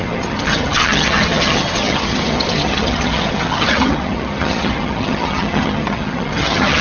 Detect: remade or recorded remade